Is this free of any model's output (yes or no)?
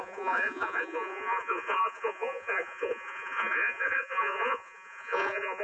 no